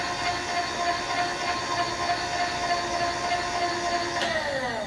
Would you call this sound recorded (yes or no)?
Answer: yes